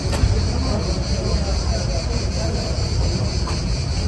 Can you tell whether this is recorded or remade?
recorded